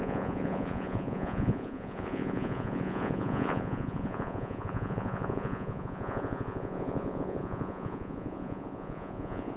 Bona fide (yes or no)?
no